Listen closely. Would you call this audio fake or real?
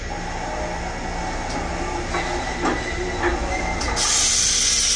real